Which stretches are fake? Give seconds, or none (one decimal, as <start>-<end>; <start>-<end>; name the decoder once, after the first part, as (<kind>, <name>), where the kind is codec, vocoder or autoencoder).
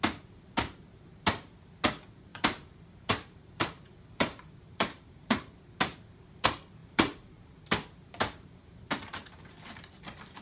2.3-5.5 (vocoder, BigVGAN v2); 6.8-7.5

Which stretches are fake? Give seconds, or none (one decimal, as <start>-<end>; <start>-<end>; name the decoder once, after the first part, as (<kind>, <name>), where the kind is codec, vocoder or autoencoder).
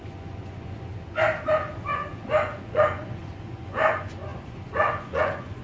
0.0-0.9 (vocoder, Vocos); 1.5-5.6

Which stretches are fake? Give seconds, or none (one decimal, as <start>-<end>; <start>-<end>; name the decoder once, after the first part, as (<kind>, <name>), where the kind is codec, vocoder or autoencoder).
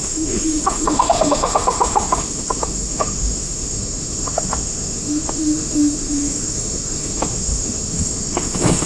0.0-8.9 (autoencoder, DAC-VAE)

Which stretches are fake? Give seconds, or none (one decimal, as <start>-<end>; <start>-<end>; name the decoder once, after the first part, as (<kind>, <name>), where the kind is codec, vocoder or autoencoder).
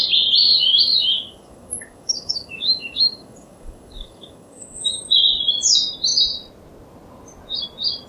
0.4-4.9 (codec, DAC)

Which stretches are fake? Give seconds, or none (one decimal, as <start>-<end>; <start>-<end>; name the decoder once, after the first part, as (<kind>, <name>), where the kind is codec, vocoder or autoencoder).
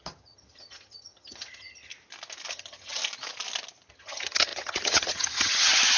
0.0-1.9 (vocoder, HiFi-GAN); 2.5-3.0; 3.9-6.0